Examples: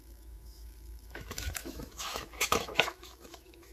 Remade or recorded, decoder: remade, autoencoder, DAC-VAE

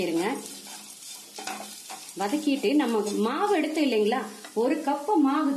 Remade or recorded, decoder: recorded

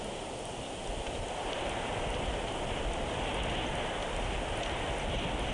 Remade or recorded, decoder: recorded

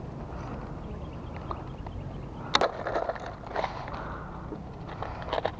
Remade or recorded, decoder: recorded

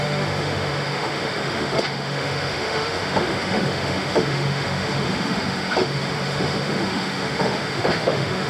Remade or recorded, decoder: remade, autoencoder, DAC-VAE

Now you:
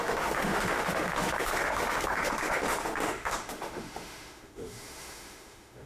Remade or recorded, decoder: remade, autoencoder, DAC-VAE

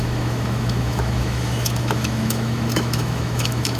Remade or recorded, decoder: remade, autoencoder, DAC-VAE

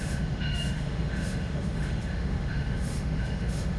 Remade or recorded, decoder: remade, autoencoder, DAC-VAE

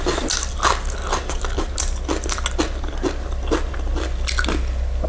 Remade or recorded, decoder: recorded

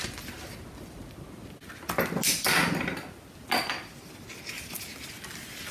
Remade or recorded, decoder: recorded